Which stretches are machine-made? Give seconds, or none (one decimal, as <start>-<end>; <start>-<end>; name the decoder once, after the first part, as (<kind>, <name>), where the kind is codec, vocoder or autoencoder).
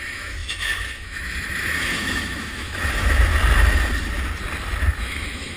0.0-3.3 (autoencoder, DAC-VAE); 4.9-5.6